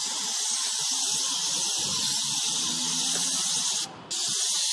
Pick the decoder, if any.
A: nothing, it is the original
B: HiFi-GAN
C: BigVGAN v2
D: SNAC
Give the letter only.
A